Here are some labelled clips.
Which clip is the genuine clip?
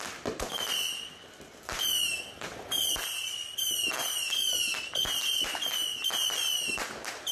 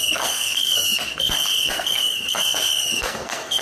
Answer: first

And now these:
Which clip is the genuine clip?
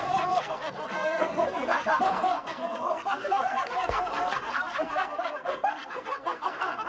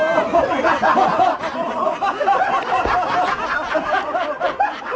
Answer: second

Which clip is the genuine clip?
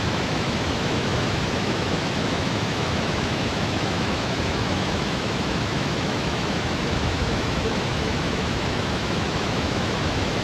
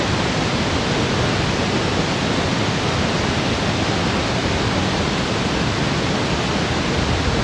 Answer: second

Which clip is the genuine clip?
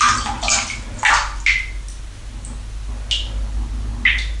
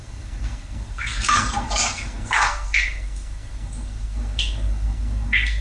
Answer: first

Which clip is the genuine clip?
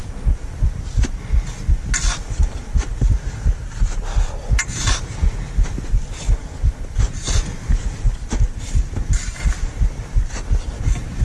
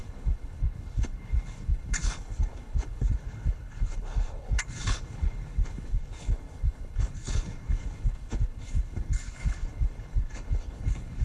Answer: first